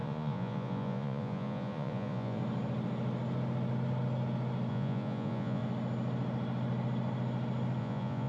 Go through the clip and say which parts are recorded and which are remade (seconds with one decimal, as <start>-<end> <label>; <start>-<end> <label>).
0.0-2.4 remade; 2.4-4.7 recorded; 4.7-5.6 remade; 5.6-7.8 recorded; 7.8-8.3 remade